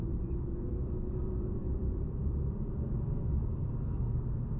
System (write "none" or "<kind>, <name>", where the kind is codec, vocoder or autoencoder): vocoder, BigVGAN v2